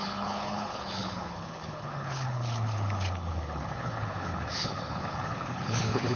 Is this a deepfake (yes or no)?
yes